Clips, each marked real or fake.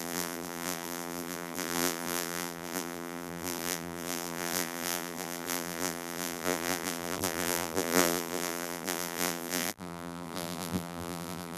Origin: fake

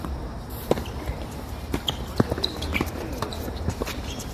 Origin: fake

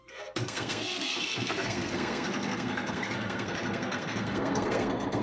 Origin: fake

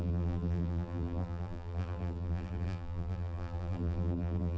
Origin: fake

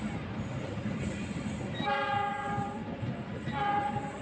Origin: fake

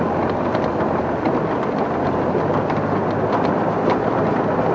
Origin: real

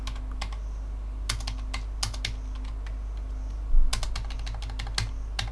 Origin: real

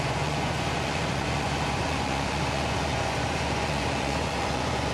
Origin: fake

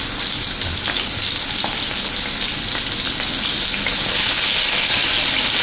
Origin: real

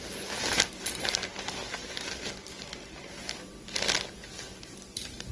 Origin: real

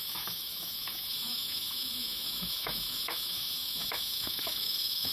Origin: fake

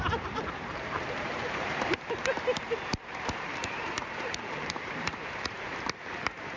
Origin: fake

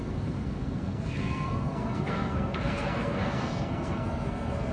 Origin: fake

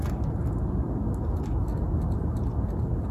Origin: real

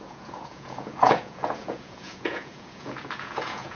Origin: fake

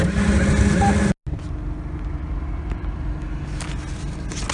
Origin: real